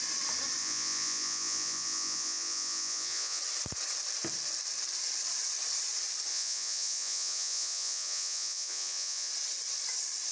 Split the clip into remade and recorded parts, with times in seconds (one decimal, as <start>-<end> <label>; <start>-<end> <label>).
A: 0.0-0.6 recorded; 0.6-3.4 remade; 3.4-6.3 recorded; 6.3-9.3 remade; 9.3-10.3 recorded